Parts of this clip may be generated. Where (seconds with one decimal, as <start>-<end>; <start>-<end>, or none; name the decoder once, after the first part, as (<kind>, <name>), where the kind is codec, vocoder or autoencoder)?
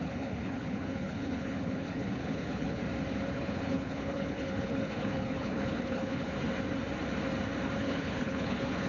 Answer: 0.0-2.8 (codec, HILCodec); 3.3-6.3; 7.8-8.9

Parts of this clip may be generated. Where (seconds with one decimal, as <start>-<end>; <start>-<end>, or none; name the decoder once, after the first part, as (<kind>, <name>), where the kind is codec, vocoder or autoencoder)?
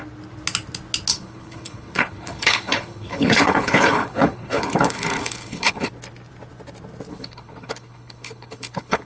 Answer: 1.1-5.9 (codec, HILCodec); 7.1-9.1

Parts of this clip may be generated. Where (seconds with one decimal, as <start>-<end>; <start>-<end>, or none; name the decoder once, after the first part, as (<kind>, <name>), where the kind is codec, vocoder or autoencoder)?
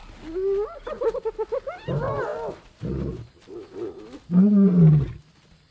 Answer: none